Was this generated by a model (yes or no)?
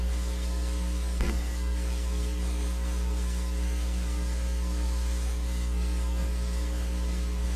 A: yes